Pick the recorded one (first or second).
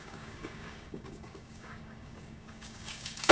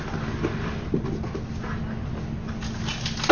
second